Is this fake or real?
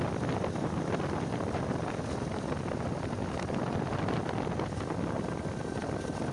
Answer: fake